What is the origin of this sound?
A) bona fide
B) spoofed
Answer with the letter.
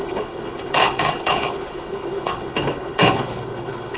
B